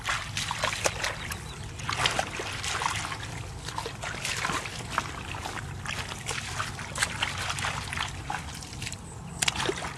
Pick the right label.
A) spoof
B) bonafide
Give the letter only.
B